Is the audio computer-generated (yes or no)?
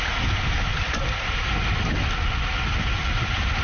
no